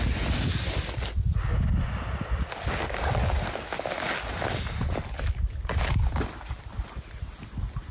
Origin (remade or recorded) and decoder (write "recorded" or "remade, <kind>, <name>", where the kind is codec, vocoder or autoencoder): recorded